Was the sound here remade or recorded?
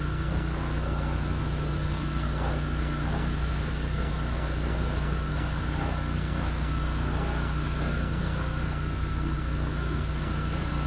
remade